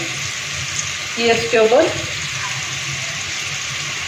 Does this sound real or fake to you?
real